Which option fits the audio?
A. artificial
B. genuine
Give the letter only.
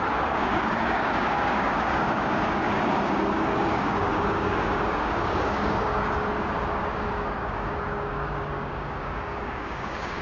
A